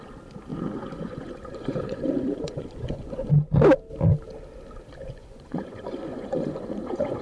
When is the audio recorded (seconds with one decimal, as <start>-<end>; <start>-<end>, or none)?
0.0-0.5; 3.3-5.0